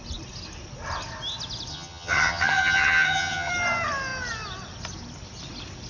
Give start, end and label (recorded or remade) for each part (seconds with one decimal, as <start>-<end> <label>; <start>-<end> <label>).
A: 0.0-1.7 recorded; 1.7-3.5 remade; 3.5-5.9 recorded